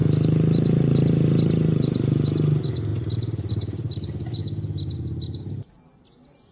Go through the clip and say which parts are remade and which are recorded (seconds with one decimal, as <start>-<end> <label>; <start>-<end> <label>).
0.0-2.4 remade; 2.4-6.5 recorded